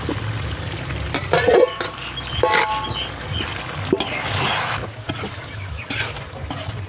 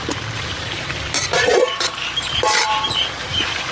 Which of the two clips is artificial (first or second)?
second